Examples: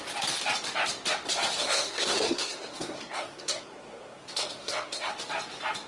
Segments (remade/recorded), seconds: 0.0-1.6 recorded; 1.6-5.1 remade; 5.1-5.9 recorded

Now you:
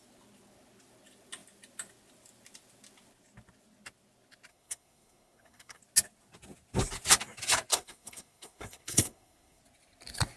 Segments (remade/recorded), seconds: 0.0-4.5 recorded; 4.5-5.8 remade; 5.8-7.7 recorded; 7.7-9.6 remade; 9.6-10.4 recorded

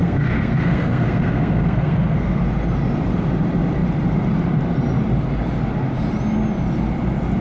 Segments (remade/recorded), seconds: 0.0-2.4 remade; 2.4-7.4 recorded

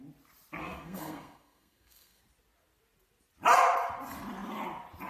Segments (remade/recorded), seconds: 0.0-0.6 recorded; 0.6-2.2 remade; 2.2-5.1 recorded

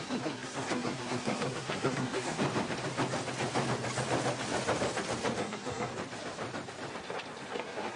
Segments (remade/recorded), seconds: 0.0-2.4 remade; 2.4-5.4 recorded; 5.4-5.9 remade; 5.9-7.5 recorded; 7.5-8.0 remade

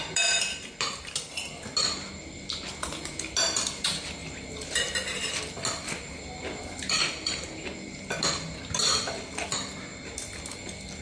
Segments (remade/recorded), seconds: 0.0-11.0 recorded

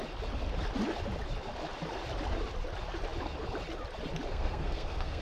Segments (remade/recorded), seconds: 0.0-4.3 recorded; 4.3-5.2 remade

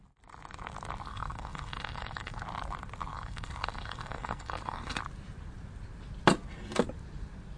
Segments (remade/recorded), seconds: 0.0-1.1 recorded; 1.1-2.4 remade; 2.4-3.1 recorded; 3.1-5.0 remade; 5.0-7.6 recorded